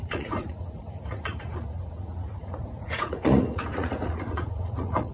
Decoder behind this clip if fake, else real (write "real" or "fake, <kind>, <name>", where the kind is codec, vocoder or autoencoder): fake, vocoder, Vocos